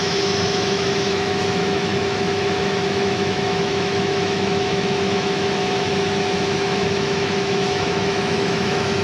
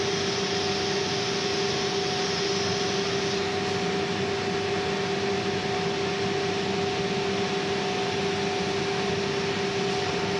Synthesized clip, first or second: first